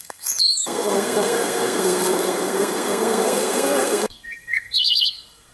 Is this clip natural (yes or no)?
no